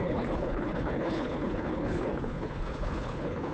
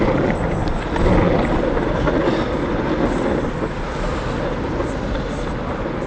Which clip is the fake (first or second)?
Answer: first